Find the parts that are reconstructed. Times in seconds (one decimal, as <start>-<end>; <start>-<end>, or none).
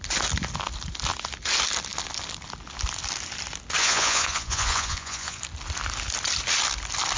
3.8-5.4